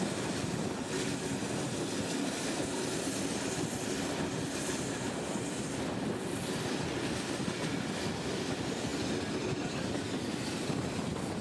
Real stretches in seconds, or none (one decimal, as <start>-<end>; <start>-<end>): 0.0-11.4

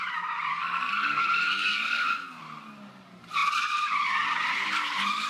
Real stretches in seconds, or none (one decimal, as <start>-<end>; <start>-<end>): 0.0-0.5; 2.4-5.3